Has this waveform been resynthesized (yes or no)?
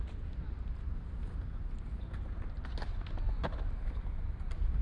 no